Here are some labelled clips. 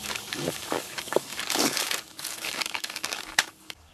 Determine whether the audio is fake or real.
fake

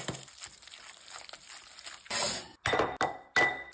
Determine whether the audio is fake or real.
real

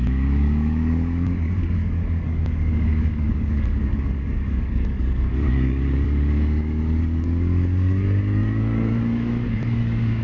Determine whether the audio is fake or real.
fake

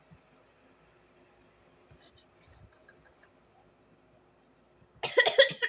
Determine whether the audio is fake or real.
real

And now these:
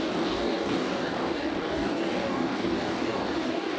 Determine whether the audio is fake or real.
fake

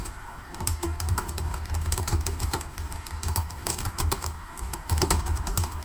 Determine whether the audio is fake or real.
fake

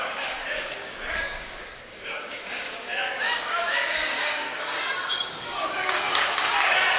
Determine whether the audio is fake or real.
fake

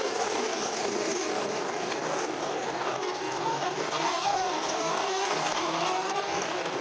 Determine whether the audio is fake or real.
fake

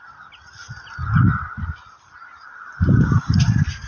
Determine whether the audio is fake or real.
real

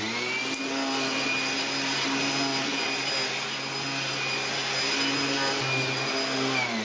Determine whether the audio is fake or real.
real